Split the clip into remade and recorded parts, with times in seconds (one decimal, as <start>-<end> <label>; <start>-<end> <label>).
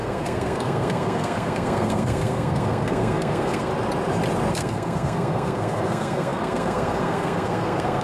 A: 0.0-3.7 remade; 3.7-4.5 recorded; 4.5-8.0 remade